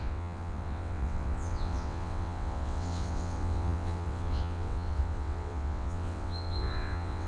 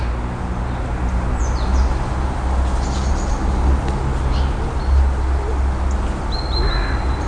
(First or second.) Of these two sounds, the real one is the second